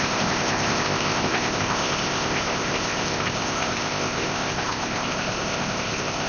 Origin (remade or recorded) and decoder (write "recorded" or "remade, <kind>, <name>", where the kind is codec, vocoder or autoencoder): remade, codec, ZipCodec